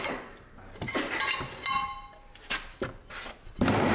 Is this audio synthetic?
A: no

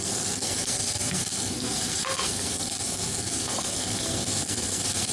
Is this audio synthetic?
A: yes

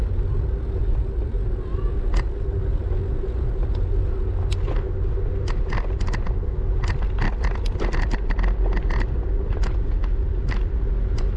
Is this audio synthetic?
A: no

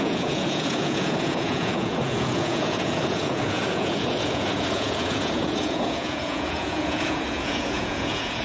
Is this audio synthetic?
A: yes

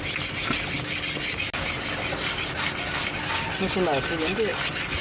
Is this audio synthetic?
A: no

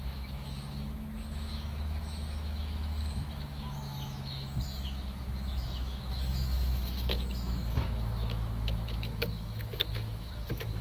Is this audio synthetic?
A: yes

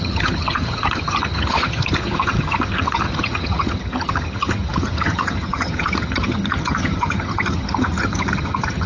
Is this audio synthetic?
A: yes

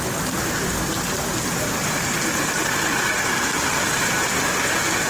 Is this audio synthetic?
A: no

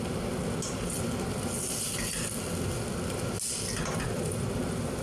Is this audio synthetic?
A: no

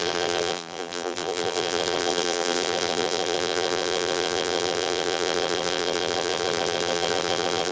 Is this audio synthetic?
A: yes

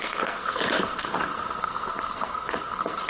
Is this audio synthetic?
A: yes